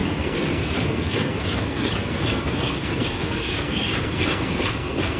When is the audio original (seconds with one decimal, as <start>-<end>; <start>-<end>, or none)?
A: none